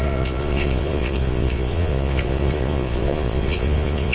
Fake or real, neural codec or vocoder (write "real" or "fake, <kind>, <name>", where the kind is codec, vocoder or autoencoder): fake, vocoder, Vocos